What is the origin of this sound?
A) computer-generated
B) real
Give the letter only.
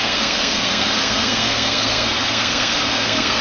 A